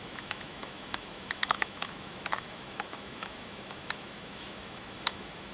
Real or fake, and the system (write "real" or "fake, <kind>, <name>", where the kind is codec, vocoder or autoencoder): fake, autoencoder, DAC-VAE